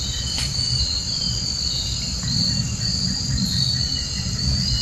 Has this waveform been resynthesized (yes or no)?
no